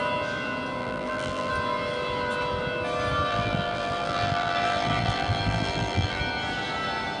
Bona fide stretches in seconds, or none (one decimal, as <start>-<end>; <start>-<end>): 0.0-0.8; 1.5-3.3; 6.2-7.2